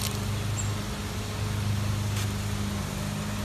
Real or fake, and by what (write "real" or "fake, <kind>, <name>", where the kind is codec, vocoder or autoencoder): real